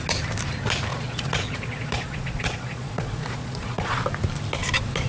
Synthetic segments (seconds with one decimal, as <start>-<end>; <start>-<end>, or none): 0.9-4.0